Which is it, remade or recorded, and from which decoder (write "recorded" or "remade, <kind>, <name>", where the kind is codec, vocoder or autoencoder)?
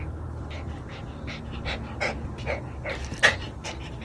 recorded